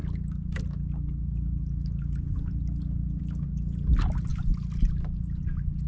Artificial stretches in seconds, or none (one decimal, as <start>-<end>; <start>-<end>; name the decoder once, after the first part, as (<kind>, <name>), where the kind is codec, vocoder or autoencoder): none

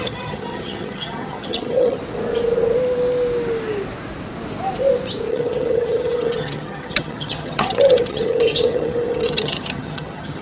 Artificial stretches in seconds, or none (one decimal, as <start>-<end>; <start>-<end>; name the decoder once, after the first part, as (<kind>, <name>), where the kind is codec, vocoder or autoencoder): 0.0-2.0 (vocoder, HiFi-GAN); 5.3-10.4

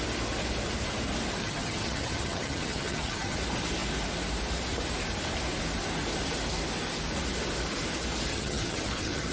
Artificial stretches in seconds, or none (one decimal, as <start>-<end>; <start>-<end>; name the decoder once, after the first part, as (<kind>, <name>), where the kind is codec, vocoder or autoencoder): 1.4-3.4 (vocoder, HiFi-GAN); 8.3-9.3

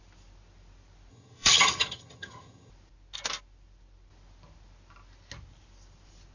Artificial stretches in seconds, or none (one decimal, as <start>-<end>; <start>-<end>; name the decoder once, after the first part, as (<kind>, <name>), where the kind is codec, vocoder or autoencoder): 1.1-2.7 (vocoder, HiFi-GAN)

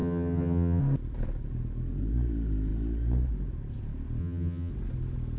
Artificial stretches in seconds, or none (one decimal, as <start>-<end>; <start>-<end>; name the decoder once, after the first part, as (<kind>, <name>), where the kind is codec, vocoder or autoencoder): 0.0-0.8 (vocoder, HiFi-GAN); 4.2-4.7